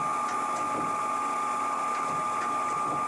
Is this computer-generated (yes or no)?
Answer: no